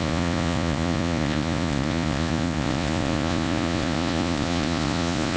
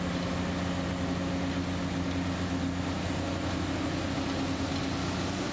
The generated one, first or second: first